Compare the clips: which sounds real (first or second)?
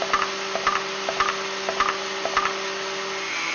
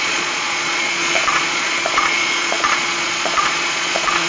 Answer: first